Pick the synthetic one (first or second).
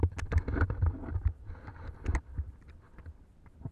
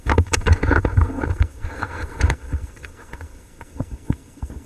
second